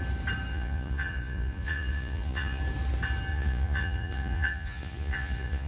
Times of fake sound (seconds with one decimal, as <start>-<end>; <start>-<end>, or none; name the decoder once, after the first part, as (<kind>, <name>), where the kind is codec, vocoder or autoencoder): 0.5-2.6 (vocoder, Vocos); 3.3-5.7